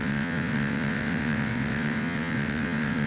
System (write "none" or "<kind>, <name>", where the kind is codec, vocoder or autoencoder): vocoder, WaveNeXt